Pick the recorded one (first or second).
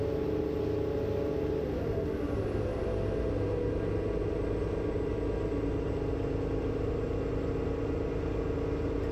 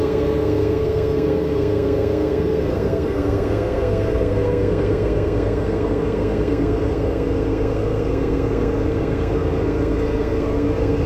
first